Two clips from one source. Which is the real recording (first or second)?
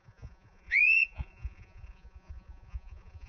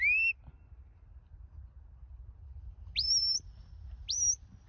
second